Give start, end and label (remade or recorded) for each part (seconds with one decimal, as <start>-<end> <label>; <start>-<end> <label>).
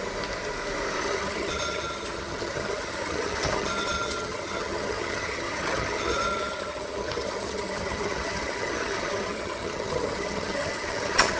0.0-1.0 recorded; 1.0-11.4 remade